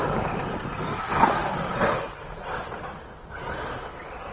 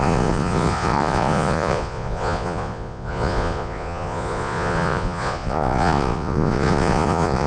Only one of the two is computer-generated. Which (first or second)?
second